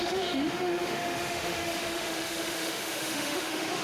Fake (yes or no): yes